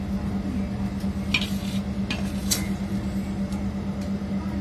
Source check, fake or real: real